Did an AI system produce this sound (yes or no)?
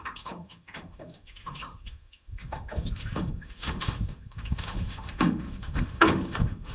yes